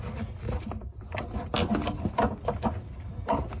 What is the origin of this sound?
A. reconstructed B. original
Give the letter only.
B